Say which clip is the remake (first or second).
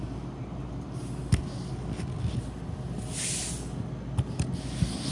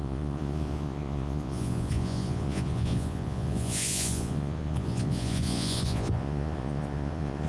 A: second